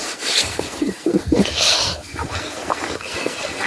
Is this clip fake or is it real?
fake